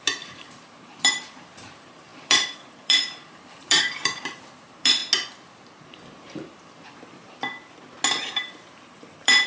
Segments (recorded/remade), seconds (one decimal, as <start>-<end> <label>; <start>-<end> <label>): 0.0-5.0 remade; 5.0-8.3 recorded; 8.3-9.5 remade